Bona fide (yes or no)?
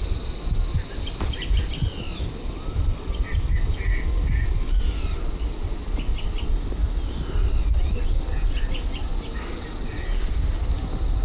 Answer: yes